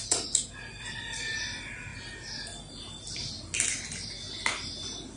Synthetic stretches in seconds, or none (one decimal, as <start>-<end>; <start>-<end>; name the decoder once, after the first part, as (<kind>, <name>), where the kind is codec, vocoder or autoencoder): none